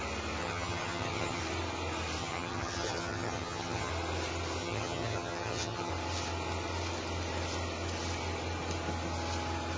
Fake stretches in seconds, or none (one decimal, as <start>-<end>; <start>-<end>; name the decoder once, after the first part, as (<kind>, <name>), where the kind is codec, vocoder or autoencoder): 0.4-1.4 (vocoder, HiFi-GAN); 2.2-3.9; 4.6-5.9